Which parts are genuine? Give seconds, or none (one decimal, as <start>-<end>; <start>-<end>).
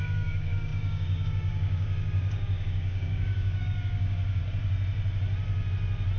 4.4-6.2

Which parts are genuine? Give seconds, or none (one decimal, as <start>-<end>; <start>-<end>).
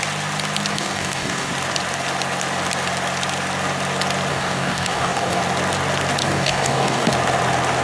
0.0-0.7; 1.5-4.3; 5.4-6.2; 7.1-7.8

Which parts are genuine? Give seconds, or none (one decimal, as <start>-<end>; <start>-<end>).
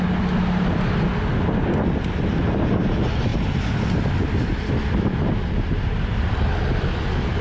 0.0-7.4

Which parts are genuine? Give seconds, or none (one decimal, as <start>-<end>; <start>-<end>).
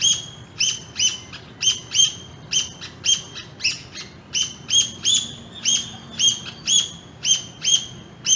0.0-8.4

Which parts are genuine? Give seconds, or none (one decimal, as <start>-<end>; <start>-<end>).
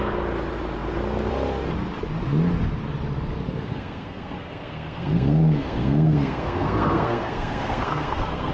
0.0-3.7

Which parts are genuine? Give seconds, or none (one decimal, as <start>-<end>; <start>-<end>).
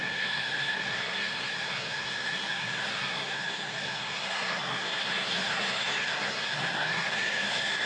none